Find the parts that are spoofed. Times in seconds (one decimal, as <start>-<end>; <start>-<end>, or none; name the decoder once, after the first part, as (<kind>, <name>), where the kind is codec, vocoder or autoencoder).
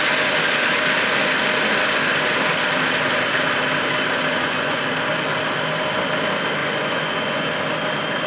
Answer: 4.3-4.8 (vocoder, Vocos); 6.6-7.5